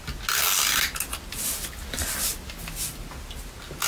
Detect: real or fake real